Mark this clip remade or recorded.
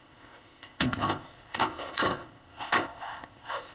remade